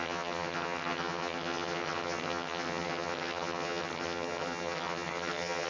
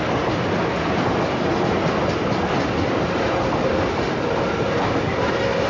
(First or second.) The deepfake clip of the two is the first